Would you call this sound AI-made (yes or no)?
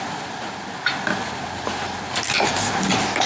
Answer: no